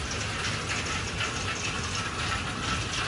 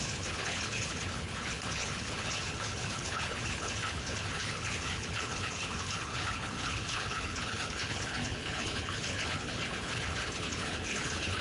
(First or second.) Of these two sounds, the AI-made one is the second